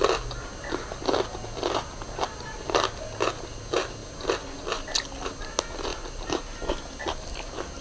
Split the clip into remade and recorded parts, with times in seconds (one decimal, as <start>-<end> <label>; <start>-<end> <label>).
0.0-7.8 recorded